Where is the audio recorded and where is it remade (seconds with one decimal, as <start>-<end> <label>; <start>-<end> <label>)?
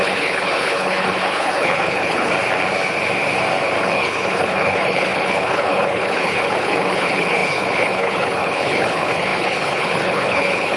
0.0-2.3 remade; 2.3-3.8 recorded; 3.8-10.8 remade